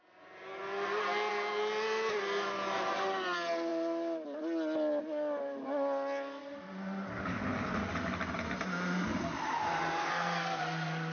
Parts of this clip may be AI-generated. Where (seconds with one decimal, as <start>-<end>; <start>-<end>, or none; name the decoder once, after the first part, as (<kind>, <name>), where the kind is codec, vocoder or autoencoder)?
10.0-10.6 (codec, SNAC)